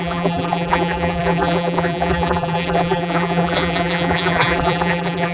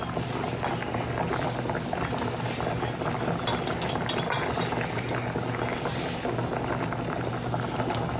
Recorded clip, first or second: second